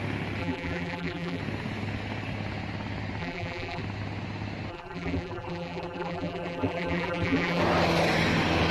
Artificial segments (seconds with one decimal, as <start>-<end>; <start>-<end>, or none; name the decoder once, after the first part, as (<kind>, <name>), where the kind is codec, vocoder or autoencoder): 0.4-1.4 (vocoder, BigVGAN v2); 3.2-3.8; 4.7-7.6